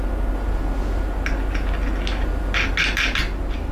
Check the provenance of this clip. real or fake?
real